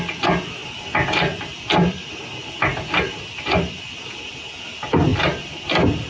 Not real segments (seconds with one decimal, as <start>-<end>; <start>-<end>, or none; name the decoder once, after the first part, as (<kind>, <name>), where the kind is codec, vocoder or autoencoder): none